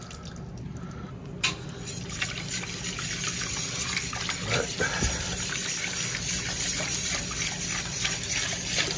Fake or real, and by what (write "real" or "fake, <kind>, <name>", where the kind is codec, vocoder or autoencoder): real